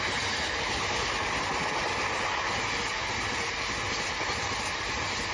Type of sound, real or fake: real